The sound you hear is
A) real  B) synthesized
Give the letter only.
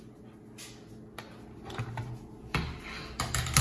A